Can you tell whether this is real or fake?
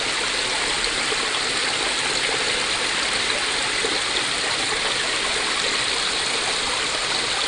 real